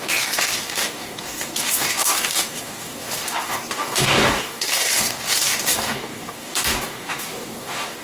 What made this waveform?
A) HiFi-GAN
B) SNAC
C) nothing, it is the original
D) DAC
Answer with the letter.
D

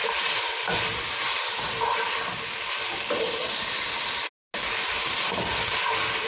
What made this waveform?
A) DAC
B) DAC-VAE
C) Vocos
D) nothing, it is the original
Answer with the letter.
D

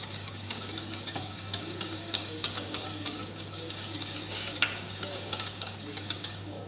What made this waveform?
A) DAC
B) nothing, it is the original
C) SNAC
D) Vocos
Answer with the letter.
A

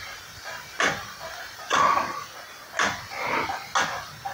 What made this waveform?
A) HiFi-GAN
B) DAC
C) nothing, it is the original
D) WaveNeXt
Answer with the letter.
C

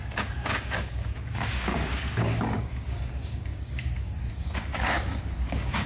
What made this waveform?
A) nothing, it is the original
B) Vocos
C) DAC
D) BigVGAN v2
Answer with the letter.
C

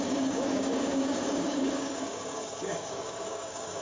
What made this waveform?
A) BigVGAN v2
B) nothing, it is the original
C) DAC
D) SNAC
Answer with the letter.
C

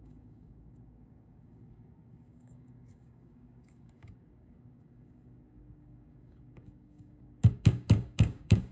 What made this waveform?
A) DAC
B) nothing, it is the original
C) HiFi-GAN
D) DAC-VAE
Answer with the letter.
A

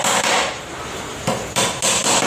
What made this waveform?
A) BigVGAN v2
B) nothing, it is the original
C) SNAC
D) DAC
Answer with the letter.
B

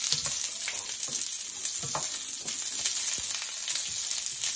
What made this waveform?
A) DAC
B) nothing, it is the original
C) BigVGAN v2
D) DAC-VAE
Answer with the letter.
B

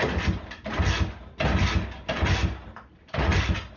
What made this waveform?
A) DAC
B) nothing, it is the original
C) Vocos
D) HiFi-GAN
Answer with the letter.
B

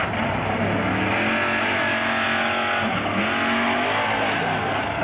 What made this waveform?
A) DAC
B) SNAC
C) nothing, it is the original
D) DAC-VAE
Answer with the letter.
C